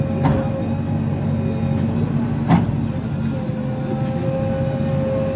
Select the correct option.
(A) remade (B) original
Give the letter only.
B